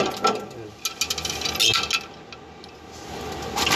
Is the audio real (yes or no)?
yes